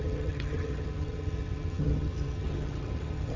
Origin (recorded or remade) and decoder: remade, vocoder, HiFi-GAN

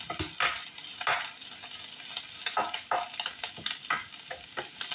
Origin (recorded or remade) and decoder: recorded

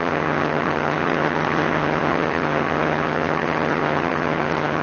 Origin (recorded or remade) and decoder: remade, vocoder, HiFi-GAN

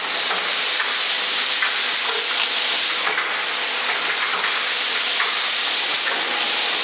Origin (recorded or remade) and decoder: recorded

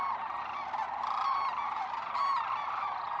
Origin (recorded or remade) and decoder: recorded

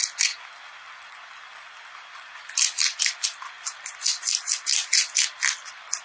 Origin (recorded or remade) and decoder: recorded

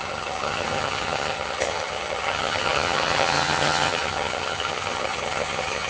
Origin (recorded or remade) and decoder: remade, vocoder, HiFi-GAN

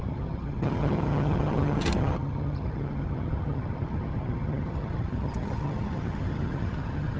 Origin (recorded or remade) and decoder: remade, vocoder, HiFi-GAN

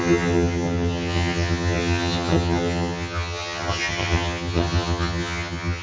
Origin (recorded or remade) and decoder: remade, vocoder, HiFi-GAN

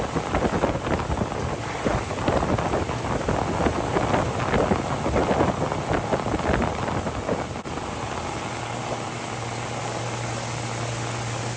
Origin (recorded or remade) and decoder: recorded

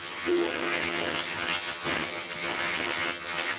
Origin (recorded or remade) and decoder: remade, vocoder, HiFi-GAN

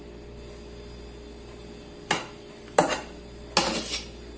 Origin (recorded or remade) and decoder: recorded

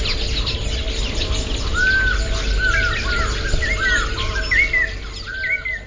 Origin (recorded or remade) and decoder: recorded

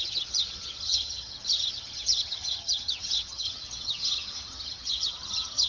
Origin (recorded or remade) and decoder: remade, vocoder, HiFi-GAN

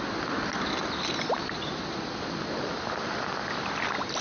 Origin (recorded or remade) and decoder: recorded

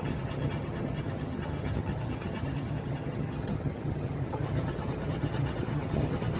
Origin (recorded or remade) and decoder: remade, vocoder, HiFi-GAN